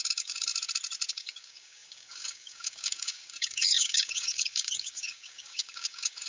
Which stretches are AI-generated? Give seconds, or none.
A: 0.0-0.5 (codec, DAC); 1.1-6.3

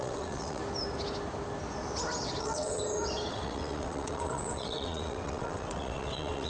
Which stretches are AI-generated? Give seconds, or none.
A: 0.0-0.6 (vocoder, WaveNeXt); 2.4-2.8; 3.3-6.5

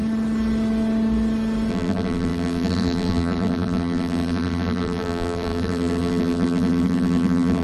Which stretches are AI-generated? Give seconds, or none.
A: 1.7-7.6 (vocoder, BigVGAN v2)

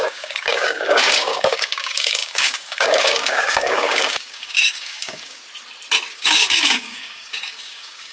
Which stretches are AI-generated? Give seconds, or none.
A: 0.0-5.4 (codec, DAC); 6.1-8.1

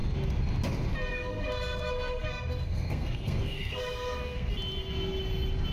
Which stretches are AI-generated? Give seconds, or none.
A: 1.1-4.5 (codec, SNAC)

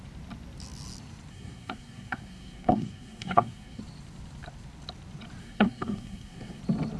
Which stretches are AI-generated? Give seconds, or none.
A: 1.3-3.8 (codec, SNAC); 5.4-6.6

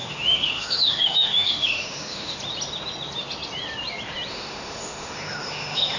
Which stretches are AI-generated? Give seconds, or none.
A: 0.0-2.4 (autoencoder, DAC-VAE); 4.3-6.0